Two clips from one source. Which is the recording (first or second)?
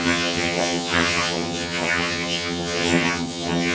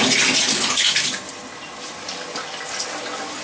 second